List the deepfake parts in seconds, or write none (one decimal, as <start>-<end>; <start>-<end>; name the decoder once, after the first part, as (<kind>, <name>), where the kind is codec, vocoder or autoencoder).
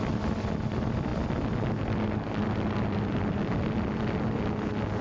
none